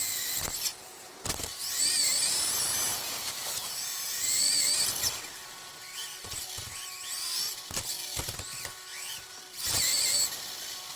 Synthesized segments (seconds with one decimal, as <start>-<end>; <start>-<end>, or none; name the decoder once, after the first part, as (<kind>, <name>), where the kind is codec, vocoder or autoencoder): 0.7-4.9 (vocoder, BigVGAN v2); 8.9-9.9